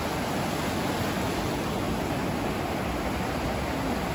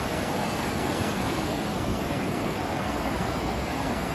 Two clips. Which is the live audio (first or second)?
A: first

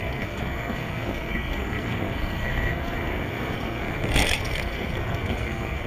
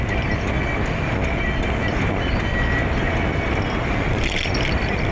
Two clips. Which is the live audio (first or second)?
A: second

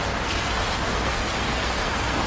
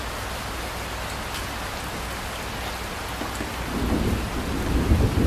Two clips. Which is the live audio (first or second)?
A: second